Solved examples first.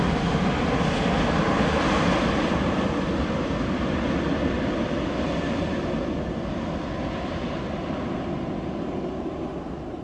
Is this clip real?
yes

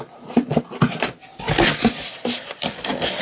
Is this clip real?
yes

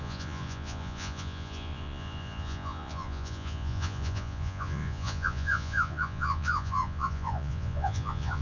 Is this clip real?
no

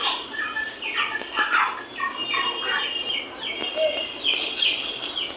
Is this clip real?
yes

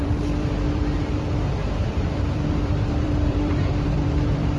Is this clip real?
no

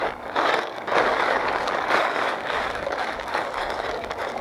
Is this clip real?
no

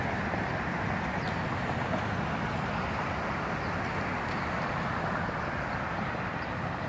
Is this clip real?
yes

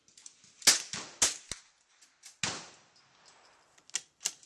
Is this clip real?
yes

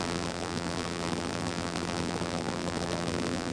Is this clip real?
no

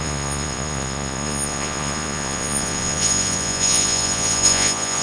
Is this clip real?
no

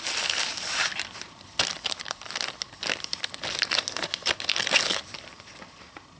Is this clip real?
yes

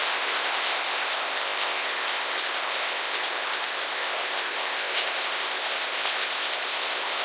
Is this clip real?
no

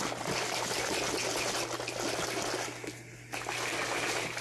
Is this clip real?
yes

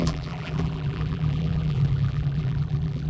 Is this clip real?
no